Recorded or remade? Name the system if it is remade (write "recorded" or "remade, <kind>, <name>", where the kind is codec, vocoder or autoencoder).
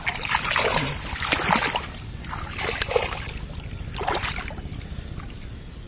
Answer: recorded